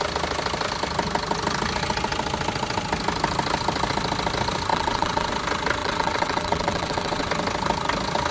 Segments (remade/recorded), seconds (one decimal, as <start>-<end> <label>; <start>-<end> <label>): 0.0-4.7 recorded; 4.7-5.3 remade; 5.3-5.8 recorded; 5.8-7.3 remade; 7.3-8.3 recorded